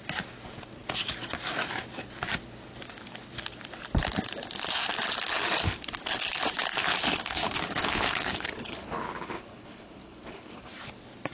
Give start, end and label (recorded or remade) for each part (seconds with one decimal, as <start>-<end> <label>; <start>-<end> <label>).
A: 0.0-6.6 recorded; 6.6-10.6 remade; 10.6-11.3 recorded